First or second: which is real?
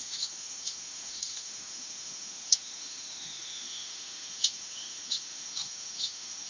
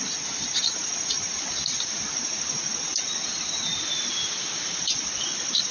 second